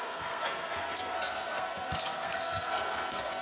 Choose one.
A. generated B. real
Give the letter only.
A